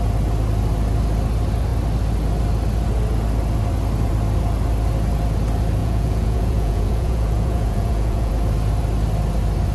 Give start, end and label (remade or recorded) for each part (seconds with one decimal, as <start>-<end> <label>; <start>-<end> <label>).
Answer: 0.0-5.8 recorded; 5.8-8.3 remade; 8.3-9.7 recorded